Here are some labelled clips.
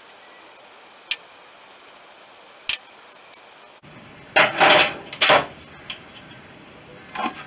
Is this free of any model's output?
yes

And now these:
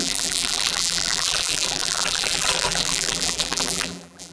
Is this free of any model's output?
no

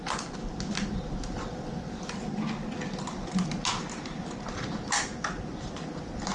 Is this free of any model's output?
yes